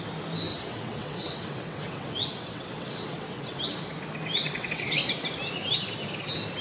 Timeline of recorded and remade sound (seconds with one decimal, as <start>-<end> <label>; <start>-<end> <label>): 0.0-0.5 recorded; 0.5-3.6 remade; 3.6-4.4 recorded; 4.4-5.0 remade; 5.0-6.6 recorded

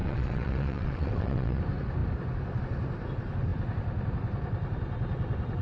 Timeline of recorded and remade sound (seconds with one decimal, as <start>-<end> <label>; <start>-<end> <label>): 0.0-1.6 remade; 1.6-5.6 recorded

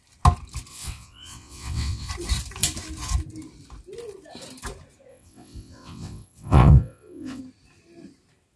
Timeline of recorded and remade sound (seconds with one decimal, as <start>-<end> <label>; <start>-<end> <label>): 0.0-0.7 recorded; 0.7-2.1 remade; 2.1-5.1 recorded; 5.1-7.4 remade; 7.4-8.6 recorded

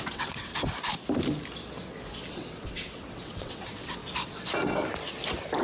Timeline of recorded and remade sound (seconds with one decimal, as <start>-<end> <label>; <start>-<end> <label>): 0.0-0.5 remade; 0.5-2.3 recorded; 2.3-4.0 remade; 4.0-5.6 recorded

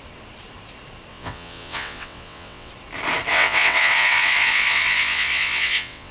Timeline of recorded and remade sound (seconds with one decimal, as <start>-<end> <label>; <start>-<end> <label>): 0.0-1.1 recorded; 1.1-2.7 remade; 2.7-3.3 recorded; 3.3-6.1 remade